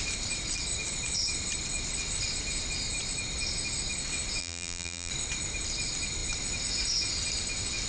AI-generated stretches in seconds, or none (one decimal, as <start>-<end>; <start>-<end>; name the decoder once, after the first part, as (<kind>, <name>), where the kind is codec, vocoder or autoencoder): 4.4-5.1 (vocoder, BigVGAN v2)